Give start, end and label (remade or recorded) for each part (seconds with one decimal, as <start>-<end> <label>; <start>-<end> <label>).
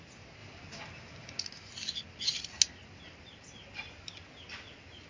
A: 0.0-5.1 recorded